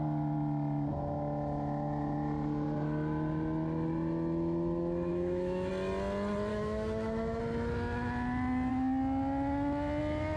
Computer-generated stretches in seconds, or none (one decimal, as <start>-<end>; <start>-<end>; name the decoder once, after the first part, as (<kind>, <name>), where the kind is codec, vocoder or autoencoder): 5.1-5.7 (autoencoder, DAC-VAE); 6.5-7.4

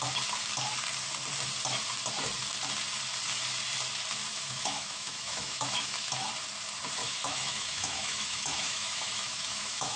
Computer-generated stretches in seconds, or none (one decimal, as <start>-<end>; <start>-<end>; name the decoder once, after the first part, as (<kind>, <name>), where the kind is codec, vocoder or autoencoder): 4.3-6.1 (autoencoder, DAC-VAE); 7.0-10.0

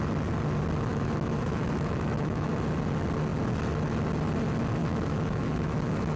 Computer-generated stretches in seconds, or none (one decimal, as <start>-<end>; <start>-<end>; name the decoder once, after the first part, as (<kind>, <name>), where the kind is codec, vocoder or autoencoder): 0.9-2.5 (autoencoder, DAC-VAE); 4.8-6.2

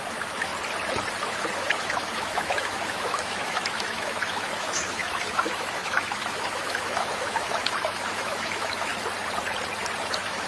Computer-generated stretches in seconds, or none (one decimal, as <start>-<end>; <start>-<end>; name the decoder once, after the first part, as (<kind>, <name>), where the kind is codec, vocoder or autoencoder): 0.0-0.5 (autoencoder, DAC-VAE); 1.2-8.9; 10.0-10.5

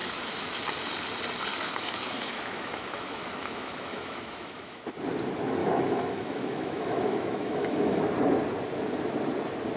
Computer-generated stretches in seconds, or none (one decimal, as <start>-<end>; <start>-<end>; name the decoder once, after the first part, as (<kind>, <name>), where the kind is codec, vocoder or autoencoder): 0.0-0.6 (autoencoder, DAC-VAE); 1.5-4.8; 5.6-8.0

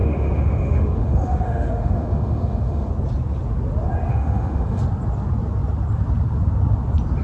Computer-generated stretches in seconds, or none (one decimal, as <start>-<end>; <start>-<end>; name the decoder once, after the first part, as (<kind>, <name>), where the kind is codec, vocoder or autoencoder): 0.0-2.9 (autoencoder, DAC-VAE); 4.1-4.8